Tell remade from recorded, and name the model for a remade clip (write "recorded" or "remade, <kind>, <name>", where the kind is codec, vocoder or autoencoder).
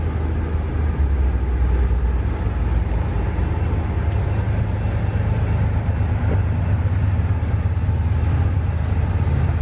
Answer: recorded